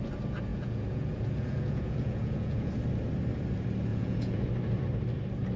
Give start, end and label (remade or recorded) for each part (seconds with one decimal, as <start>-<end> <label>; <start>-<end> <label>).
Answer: 0.0-0.5 recorded; 0.5-2.7 remade; 2.7-3.9 recorded; 3.9-4.4 remade; 4.4-5.6 recorded